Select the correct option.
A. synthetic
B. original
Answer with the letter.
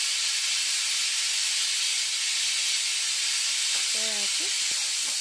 B